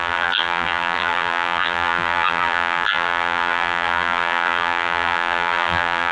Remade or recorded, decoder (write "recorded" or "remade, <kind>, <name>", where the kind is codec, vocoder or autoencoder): remade, vocoder, BigVGAN v2